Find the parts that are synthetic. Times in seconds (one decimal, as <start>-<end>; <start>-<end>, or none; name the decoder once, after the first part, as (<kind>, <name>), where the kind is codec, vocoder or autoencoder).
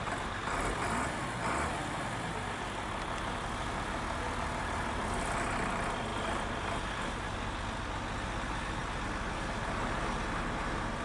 none